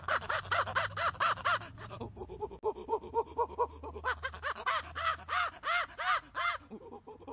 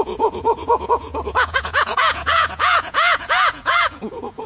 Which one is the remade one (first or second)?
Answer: second